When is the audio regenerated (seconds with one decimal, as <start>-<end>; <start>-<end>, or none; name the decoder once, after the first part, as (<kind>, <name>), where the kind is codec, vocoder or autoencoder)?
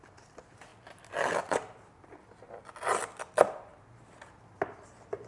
none